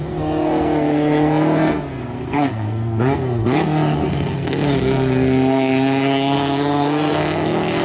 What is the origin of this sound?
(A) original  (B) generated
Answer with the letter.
B